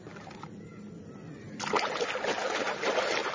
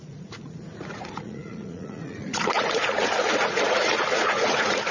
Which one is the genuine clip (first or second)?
first